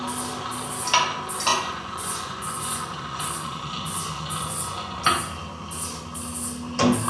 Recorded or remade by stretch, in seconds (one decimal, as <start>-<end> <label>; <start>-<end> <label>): 0.0-1.5 recorded; 1.5-5.0 remade; 5.0-7.1 recorded